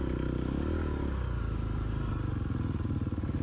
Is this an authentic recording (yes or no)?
yes